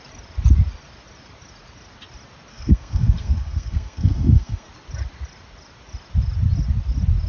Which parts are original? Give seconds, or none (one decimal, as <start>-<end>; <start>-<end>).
0.0-2.5; 4.7-7.3